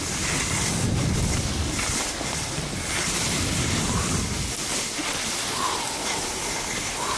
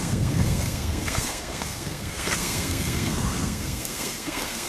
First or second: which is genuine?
first